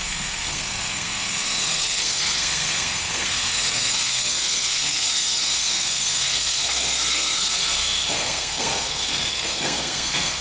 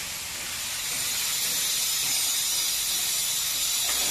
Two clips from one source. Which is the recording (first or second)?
second